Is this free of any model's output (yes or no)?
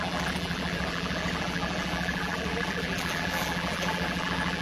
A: no